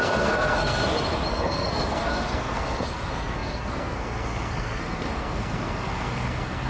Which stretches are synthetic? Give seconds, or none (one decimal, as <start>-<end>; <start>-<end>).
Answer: 0.0-0.8; 1.3-6.7